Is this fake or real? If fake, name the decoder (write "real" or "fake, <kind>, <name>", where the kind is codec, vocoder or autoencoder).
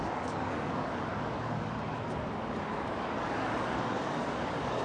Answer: fake, codec, DAC